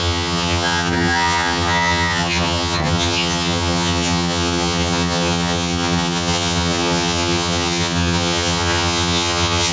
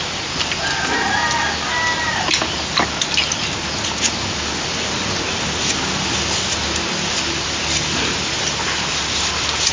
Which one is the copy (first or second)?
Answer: first